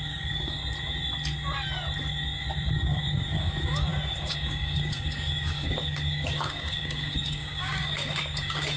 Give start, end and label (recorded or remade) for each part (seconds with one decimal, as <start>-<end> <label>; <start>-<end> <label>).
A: 0.0-0.6 remade; 0.6-2.7 recorded; 2.7-8.8 remade